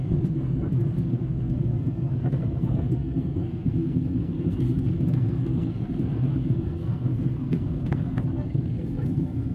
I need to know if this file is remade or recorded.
remade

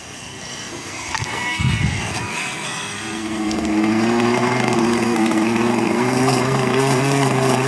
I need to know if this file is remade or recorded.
remade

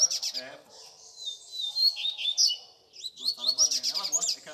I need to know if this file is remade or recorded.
recorded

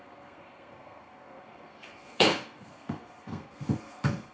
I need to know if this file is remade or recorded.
remade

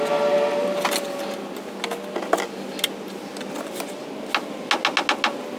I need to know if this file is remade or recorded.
recorded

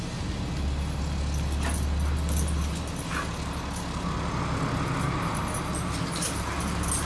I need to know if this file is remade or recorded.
recorded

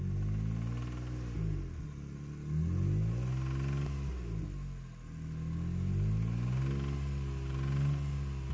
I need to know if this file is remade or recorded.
recorded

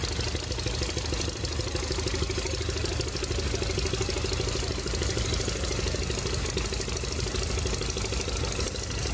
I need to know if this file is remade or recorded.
recorded